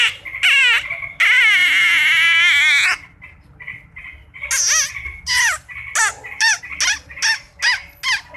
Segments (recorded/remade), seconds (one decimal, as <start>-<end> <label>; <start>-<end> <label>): 0.0-8.4 recorded